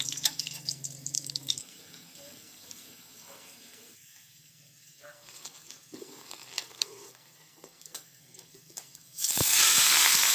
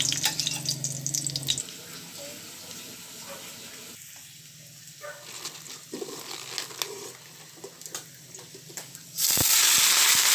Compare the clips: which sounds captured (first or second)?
second